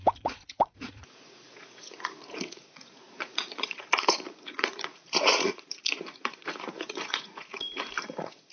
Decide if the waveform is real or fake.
fake